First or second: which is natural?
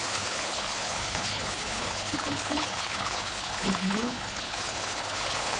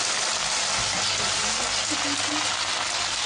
second